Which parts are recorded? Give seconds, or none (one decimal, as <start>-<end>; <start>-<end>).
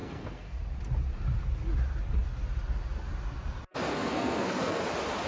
0.6-3.9; 4.8-5.3